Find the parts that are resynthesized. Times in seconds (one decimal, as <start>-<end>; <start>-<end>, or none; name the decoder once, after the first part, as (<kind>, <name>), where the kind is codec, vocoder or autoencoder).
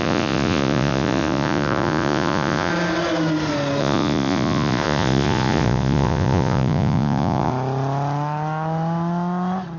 0.0-2.7 (vocoder, Vocos); 3.8-7.5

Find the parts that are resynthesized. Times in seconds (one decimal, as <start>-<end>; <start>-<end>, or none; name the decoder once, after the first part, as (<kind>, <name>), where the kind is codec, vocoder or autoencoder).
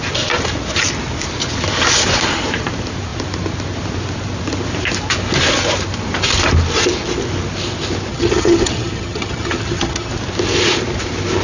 8.1-10.1 (vocoder, HiFi-GAN)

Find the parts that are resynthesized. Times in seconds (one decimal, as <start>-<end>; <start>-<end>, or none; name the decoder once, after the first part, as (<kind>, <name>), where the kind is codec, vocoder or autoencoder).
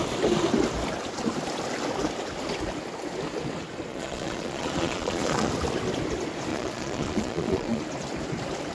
3.9-5.5 (vocoder, Vocos); 6.5-7.8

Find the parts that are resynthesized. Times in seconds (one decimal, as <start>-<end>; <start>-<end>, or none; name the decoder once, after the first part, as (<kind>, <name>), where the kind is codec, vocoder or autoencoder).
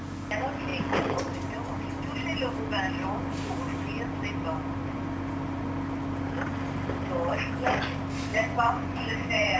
8.3-9.6 (vocoder, Vocos)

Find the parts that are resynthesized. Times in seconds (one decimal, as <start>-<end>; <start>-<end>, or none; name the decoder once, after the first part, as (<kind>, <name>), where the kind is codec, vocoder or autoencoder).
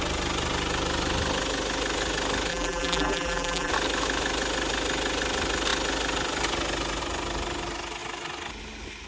2.5-3.7 (vocoder, BigVGAN v2)